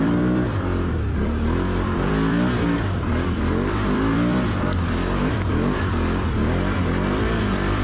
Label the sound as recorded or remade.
remade